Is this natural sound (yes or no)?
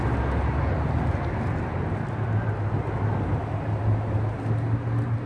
yes